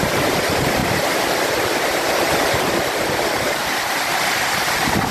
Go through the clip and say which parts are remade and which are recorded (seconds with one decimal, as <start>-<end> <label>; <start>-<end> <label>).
0.0-0.8 recorded; 0.8-3.9 remade; 3.9-5.1 recorded